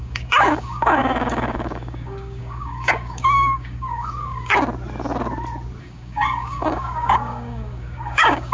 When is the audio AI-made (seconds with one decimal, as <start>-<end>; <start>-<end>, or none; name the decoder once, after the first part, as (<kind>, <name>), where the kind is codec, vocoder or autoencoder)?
0.0-4.5 (codec, DAC); 5.8-8.5